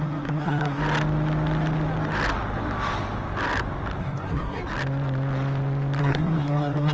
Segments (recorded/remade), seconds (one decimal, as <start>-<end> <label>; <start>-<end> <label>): 0.0-0.8 remade; 0.8-4.0 recorded; 4.0-4.6 remade; 4.6-6.0 recorded; 6.0-6.9 remade